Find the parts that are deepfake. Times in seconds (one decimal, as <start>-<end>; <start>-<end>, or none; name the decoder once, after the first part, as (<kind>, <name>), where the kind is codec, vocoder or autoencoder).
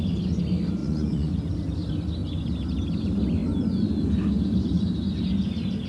0.8-1.3 (vocoder, Vocos)